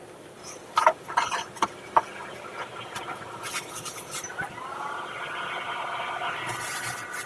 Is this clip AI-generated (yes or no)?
no